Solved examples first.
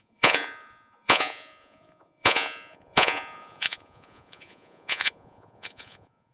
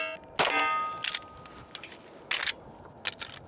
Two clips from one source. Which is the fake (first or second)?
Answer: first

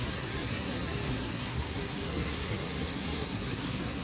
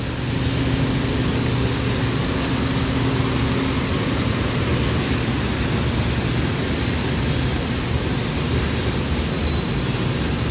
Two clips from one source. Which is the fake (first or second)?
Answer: first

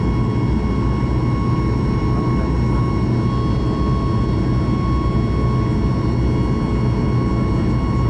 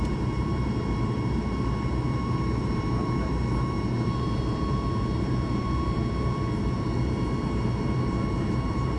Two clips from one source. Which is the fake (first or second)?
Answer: second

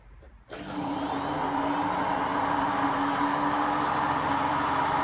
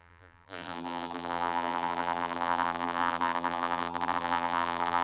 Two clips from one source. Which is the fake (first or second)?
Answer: second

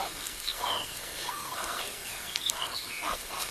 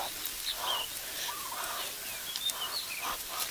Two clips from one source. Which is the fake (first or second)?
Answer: first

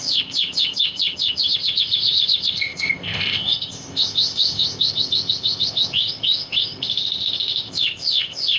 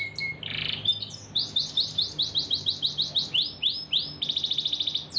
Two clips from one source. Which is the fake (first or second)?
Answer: first